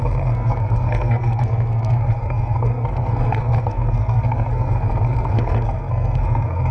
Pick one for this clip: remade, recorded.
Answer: remade